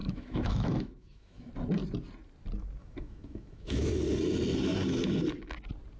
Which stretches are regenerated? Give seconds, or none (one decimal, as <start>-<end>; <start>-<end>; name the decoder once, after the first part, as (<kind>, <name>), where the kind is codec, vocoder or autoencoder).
0.0-1.5 (autoencoder, DAC-VAE); 2.8-3.9

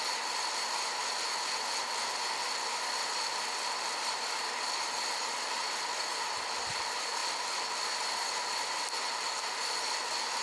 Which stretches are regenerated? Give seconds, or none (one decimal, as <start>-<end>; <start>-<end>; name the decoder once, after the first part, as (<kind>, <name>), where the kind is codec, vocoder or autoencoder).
none

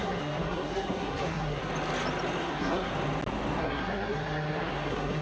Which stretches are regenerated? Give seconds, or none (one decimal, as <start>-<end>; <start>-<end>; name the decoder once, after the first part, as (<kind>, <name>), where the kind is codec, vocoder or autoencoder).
0.0-1.6 (codec, SNAC); 2.4-2.9; 3.6-5.2

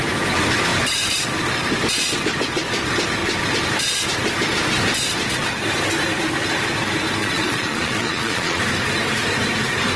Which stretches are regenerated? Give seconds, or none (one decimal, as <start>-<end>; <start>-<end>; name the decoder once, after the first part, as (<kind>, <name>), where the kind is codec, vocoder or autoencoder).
7.2-8.6 (vocoder, Vocos)

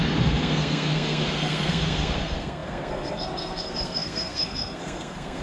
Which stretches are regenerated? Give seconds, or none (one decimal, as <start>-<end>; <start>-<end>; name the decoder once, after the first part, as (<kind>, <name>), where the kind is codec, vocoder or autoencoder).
0.0-5.4 (codec, SNAC)

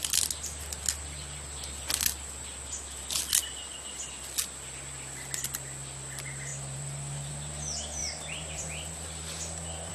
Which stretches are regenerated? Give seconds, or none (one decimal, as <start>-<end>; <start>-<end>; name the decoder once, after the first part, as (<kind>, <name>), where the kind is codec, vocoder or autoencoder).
6.5-7.3 (vocoder, BigVGAN v2); 8.0-9.9

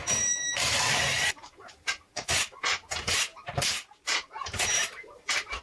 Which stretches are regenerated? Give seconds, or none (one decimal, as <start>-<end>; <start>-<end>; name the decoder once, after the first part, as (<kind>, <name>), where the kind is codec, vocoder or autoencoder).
0.0-5.6 (vocoder, BigVGAN v2)

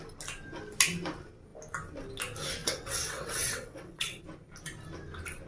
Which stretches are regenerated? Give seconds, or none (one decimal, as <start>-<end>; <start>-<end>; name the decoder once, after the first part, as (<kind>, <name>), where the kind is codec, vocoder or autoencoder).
2.6-4.2 (vocoder, WaveNeXt)